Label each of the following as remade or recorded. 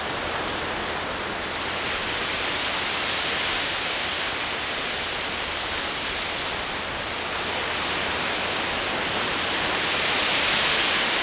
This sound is recorded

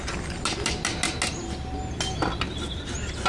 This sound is recorded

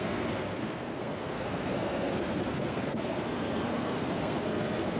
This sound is remade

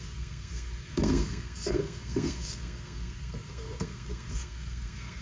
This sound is remade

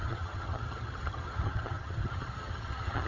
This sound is remade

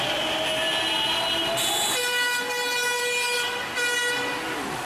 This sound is recorded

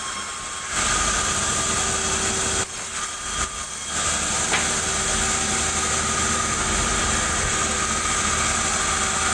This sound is recorded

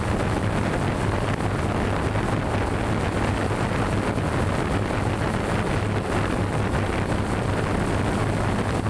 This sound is recorded